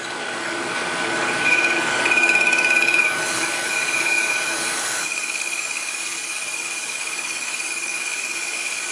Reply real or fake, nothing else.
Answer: fake